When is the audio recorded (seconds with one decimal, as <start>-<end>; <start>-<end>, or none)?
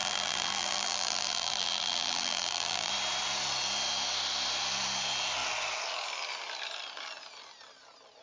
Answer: 2.9-8.2